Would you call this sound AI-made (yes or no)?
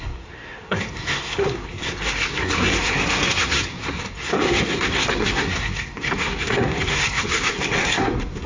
yes